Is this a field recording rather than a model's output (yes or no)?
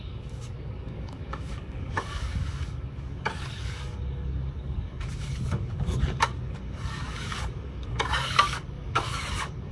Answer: no